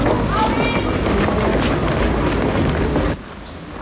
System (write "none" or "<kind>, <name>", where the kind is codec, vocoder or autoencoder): none